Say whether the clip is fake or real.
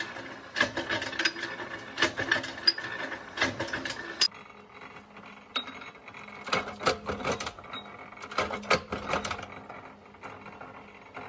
real